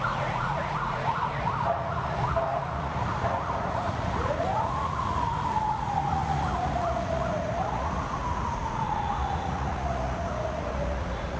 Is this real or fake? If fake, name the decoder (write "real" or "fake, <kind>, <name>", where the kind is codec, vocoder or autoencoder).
fake, vocoder, Vocos